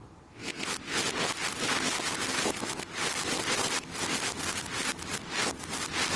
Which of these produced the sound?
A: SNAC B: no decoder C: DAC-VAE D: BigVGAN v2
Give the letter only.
B